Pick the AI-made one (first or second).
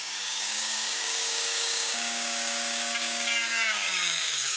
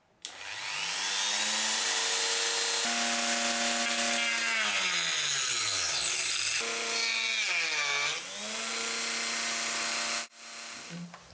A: first